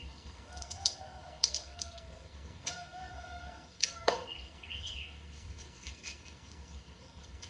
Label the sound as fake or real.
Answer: fake